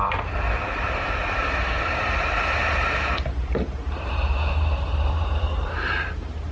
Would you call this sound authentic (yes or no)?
no